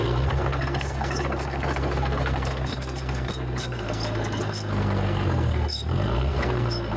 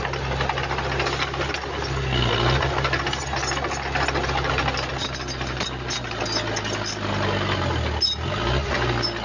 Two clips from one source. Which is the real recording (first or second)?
second